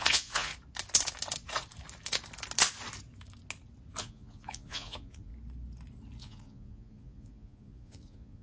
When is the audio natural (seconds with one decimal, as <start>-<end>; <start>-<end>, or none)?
0.5-4.0; 5.3-6.2